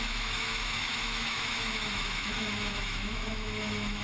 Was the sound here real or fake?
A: fake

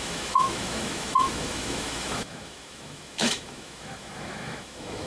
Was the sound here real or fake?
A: fake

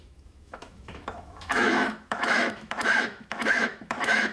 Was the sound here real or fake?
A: fake